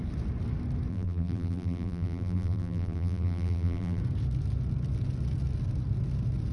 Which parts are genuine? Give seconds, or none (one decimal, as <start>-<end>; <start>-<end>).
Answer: 0.0-0.9; 4.0-6.5